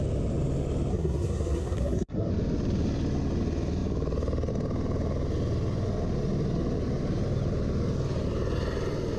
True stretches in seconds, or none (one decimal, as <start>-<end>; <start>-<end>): 0.0-0.9; 2.3-9.2